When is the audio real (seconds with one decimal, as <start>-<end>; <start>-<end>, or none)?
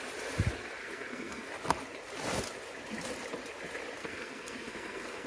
0.0-0.8; 1.5-4.0